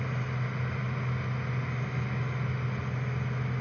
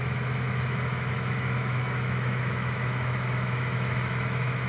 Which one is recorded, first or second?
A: first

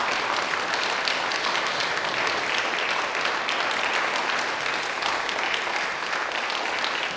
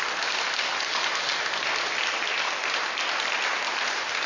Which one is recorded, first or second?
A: first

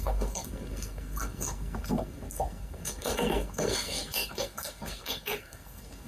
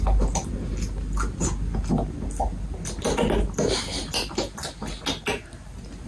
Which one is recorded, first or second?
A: second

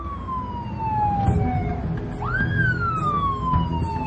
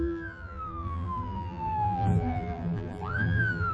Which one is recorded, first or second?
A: first